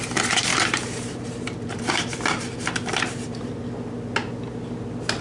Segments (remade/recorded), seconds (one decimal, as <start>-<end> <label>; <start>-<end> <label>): 0.0-0.5 recorded; 0.5-3.6 remade; 3.6-5.2 recorded